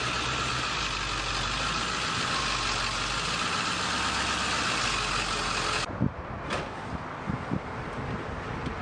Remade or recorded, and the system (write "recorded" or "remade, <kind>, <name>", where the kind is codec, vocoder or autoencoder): recorded